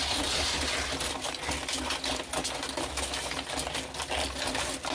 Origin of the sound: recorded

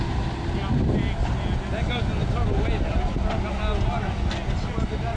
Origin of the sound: recorded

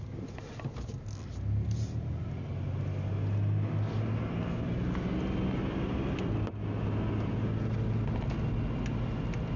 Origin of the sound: recorded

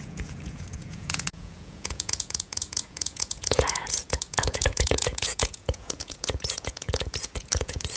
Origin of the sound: remade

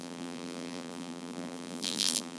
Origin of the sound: remade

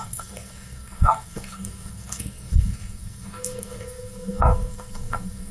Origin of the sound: remade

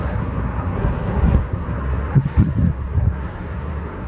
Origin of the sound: remade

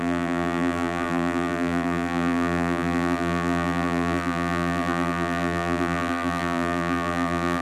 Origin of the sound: remade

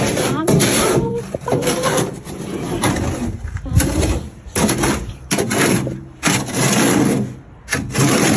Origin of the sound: remade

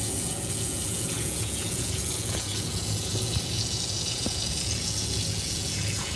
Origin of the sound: remade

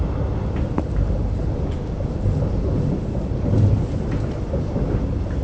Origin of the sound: recorded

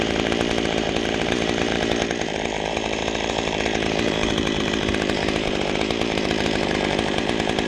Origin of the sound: remade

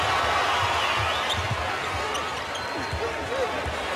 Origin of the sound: recorded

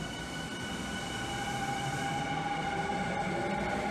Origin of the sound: recorded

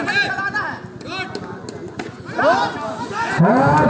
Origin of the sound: recorded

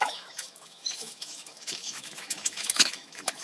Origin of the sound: remade